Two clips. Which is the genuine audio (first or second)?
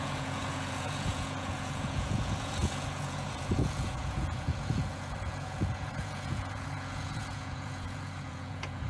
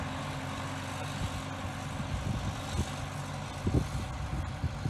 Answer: second